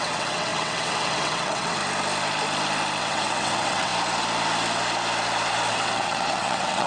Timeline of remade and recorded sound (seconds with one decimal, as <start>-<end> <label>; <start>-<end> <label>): 0.0-1.8 remade; 1.8-3.0 recorded; 3.0-3.9 remade; 3.9-5.7 recorded; 5.7-6.9 remade